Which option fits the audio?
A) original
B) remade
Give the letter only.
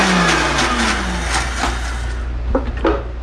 A